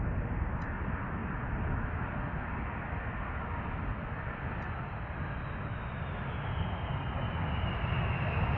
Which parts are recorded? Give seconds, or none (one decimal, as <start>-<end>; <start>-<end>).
0.0-8.6